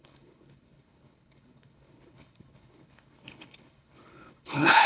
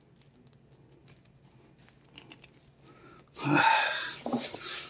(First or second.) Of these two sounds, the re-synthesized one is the first